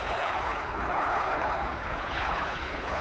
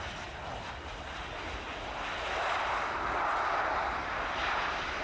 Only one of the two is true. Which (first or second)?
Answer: second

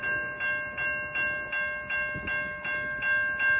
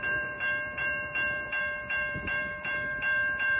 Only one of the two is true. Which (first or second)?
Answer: first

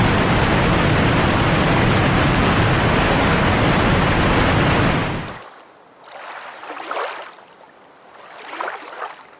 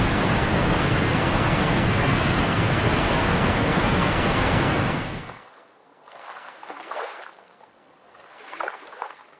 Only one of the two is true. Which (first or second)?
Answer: first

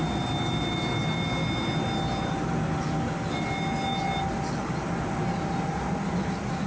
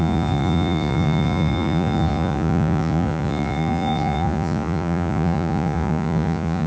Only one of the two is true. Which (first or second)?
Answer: first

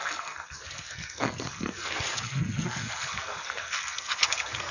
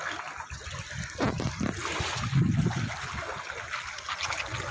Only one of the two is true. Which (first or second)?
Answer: second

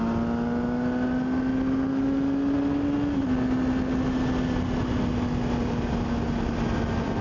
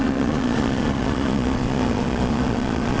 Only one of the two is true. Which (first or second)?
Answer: first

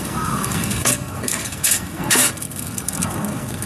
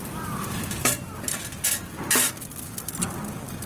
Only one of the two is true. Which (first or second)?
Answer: second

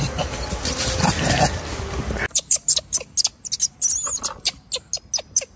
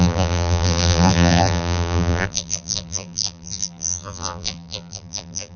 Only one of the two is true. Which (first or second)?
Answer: first